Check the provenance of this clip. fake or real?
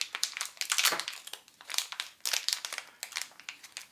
real